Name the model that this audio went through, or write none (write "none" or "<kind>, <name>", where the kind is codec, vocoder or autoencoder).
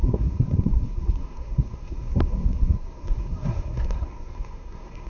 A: codec, SNAC